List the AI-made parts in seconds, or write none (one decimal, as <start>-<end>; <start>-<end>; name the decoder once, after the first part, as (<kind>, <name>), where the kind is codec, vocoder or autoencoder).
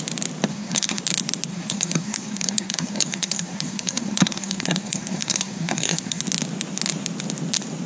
0.5-1.0 (codec, SNAC); 1.5-6.2